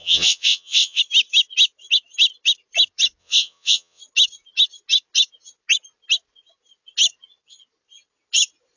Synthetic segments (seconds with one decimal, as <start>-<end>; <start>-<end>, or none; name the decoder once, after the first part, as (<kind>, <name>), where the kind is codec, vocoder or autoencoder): 0.0-1.0 (vocoder, WaveNeXt); 3.2-4.0